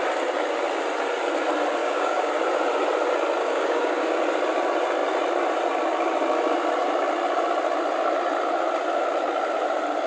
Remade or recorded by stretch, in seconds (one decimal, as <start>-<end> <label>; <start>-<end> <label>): 0.0-1.8 recorded; 1.8-2.3 remade; 2.3-3.4 recorded; 3.4-4.2 remade; 4.2-10.1 recorded